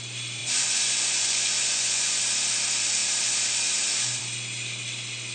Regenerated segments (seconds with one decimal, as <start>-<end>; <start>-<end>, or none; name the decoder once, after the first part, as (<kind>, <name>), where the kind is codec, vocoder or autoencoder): 0.4-2.2 (vocoder, Vocos)